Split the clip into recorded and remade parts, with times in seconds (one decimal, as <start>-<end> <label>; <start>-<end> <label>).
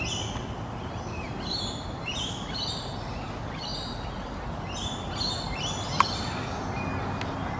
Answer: 0.0-3.7 recorded; 3.7-4.6 remade; 4.6-7.6 recorded